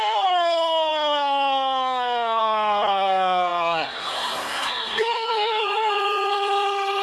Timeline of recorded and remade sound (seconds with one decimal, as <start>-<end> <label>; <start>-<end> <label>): 0.0-7.0 remade